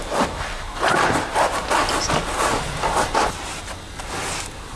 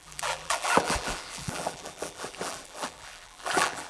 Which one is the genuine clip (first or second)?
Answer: first